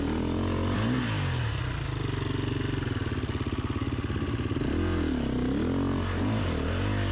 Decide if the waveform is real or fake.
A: real